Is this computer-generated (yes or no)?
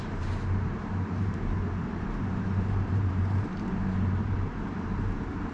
yes